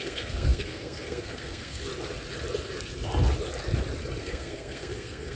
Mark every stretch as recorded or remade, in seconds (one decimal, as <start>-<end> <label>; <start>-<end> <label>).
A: 0.0-1.9 remade; 1.9-4.2 recorded; 4.2-5.4 remade